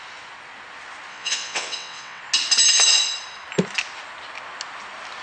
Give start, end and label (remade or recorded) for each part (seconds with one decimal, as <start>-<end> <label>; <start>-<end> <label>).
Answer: 0.0-1.1 recorded; 1.1-2.2 remade; 2.2-5.2 recorded